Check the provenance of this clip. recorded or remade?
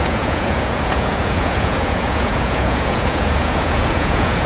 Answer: remade